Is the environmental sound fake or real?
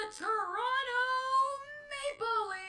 fake